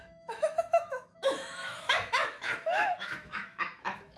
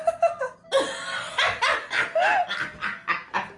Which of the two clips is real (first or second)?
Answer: second